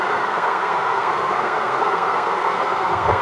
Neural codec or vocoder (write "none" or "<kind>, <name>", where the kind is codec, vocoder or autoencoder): codec, SNAC